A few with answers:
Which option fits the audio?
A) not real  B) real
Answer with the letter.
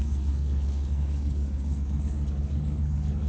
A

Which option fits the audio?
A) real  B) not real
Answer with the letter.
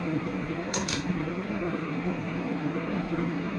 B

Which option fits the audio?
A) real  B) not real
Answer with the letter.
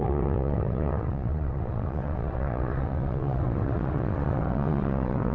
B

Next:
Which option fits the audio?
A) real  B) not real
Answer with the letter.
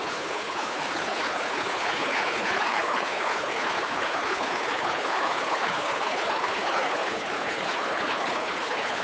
B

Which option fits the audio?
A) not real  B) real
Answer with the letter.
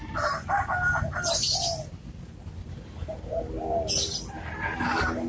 A